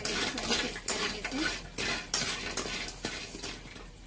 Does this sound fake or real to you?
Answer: real